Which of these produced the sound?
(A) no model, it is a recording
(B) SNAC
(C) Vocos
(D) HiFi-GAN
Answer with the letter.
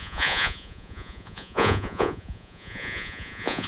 C